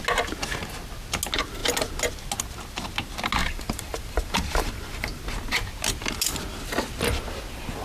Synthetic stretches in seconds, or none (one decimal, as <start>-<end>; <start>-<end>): 3.4-5.2